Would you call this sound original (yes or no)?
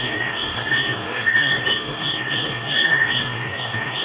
no